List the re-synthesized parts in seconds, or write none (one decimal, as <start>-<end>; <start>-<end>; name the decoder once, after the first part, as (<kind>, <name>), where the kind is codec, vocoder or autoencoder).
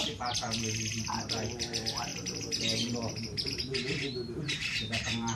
0.0-5.4 (vocoder, BigVGAN v2)